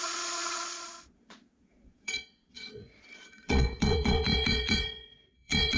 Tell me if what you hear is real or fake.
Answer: fake